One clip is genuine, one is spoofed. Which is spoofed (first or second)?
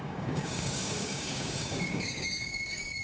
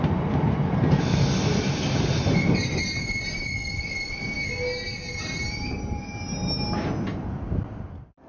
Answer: first